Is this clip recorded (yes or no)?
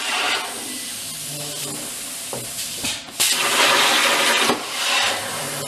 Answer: no